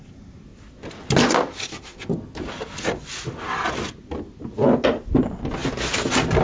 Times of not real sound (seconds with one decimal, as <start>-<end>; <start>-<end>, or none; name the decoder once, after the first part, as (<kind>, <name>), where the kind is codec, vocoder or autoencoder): none